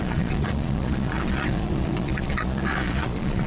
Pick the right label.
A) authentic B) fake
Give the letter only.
B